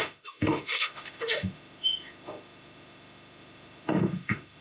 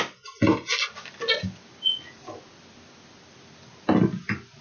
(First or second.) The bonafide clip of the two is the second